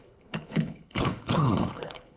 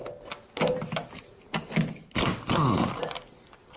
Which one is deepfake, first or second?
first